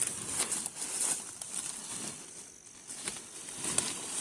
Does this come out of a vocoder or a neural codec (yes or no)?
no